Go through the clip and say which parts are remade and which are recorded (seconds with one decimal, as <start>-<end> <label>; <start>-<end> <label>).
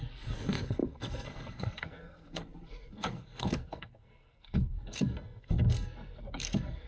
0.0-6.9 remade